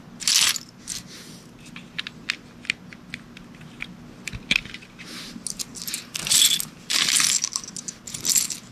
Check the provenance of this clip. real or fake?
real